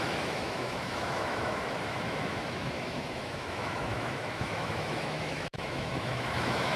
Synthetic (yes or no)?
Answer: yes